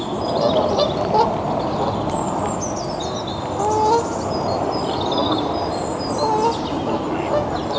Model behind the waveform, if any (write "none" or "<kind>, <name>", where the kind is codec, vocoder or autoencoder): none